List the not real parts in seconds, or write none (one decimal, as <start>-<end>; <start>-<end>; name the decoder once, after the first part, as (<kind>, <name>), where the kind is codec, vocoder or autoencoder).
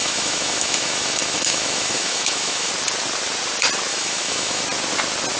0.0-2.7 (autoencoder, DAC-VAE); 3.9-4.6